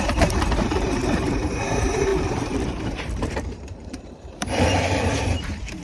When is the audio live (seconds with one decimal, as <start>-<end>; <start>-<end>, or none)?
2.1-2.9